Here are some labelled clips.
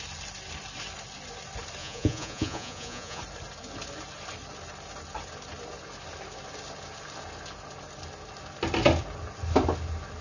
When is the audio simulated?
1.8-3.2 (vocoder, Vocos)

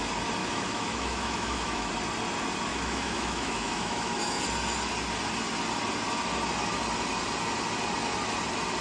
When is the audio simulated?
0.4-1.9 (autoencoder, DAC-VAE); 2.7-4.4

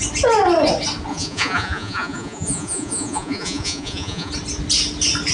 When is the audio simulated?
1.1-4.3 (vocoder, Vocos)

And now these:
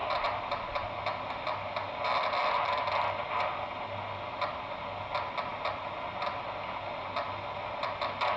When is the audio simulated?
none

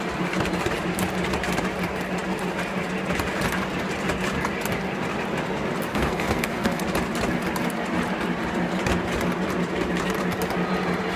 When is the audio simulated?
5.9-6.8 (codec, SNAC)

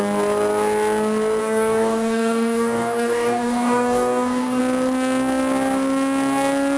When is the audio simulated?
1.4-4.6 (codec, DAC)

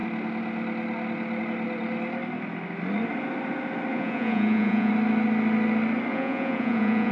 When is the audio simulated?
3.9-4.9 (vocoder, Vocos); 6.1-7.1

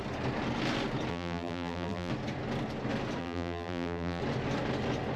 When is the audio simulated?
1.1-2.1 (vocoder, BigVGAN v2); 3.2-4.2